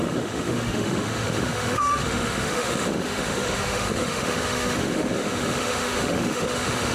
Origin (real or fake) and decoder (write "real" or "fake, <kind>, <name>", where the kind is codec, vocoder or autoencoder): fake, autoencoder, DAC-VAE